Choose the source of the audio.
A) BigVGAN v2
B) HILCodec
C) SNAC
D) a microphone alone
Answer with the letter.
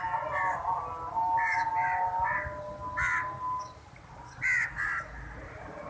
D